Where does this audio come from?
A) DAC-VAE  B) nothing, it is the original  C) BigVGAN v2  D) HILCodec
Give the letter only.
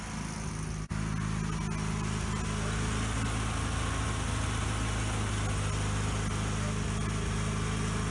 B